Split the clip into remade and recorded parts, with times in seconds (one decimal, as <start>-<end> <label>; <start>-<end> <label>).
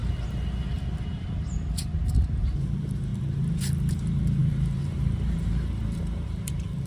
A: 0.0-2.1 recorded; 2.1-3.1 remade; 3.1-3.9 recorded; 3.9-6.9 remade